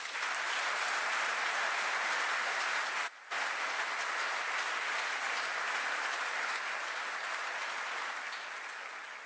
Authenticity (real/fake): real